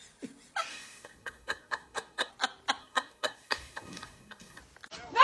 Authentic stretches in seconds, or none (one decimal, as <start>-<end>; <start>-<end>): 0.0-0.7; 2.3-2.8; 4.6-5.2